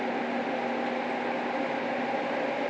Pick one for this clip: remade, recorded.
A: recorded